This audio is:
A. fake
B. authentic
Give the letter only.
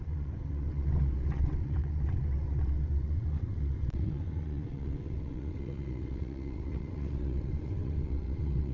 A